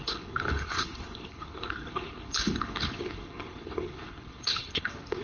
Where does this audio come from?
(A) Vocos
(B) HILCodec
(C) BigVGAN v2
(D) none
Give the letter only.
B